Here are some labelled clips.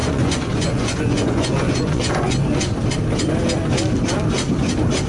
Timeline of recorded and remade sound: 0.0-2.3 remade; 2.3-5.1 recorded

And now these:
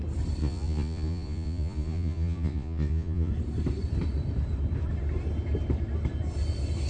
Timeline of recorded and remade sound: 0.0-0.4 recorded; 0.4-3.3 remade; 3.3-6.9 recorded

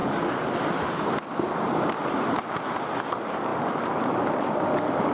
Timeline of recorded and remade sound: 0.0-5.1 recorded

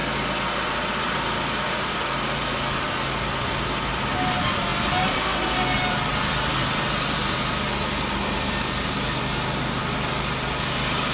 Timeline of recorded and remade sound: 0.0-11.1 recorded

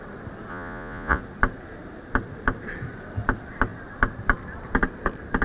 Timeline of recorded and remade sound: 0.0-0.5 recorded; 0.5-1.2 remade; 1.2-5.4 recorded